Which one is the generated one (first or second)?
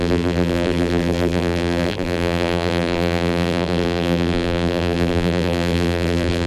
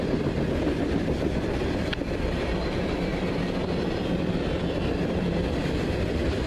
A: first